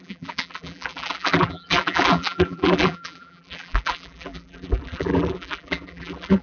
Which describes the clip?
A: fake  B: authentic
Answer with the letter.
A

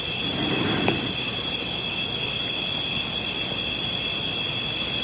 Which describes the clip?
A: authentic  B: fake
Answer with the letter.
A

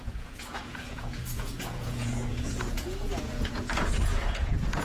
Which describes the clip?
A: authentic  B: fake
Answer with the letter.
B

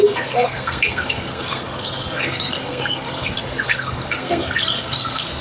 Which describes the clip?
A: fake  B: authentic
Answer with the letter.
A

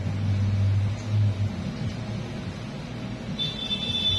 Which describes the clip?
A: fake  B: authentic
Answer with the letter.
B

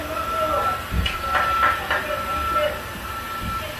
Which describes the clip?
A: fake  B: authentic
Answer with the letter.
B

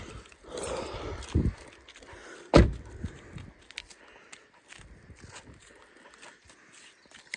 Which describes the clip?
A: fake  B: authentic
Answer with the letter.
B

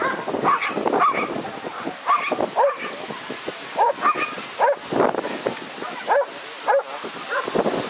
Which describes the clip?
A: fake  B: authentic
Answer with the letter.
B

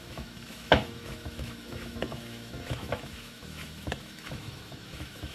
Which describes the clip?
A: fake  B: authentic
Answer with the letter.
A